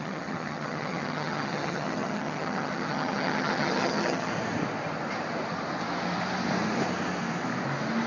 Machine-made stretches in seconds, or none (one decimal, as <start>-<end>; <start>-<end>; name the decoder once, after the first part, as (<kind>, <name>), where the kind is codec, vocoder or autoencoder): 0.0-4.3 (vocoder, HiFi-GAN)